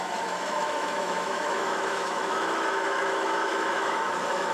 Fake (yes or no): yes